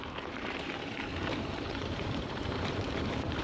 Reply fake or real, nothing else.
fake